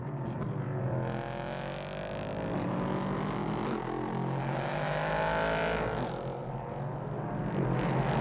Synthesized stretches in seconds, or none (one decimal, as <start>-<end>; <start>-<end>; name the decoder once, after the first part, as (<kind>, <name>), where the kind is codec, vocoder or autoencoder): none